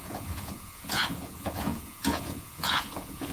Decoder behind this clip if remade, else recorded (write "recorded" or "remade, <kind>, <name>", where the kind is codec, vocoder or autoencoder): remade, vocoder, Vocos